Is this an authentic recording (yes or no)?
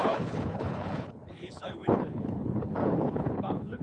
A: no